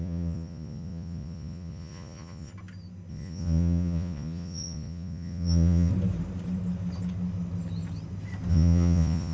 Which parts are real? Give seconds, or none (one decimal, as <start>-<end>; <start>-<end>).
2.5-3.1; 5.9-8.5